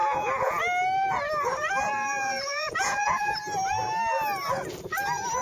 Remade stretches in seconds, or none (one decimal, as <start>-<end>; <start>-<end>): 0.0-0.6; 2.2-3.3